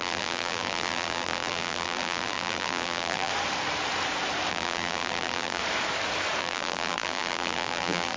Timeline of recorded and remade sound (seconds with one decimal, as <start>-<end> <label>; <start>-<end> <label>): 0.0-3.3 remade; 3.3-4.5 recorded; 4.5-5.6 remade; 5.6-6.4 recorded; 6.4-8.2 remade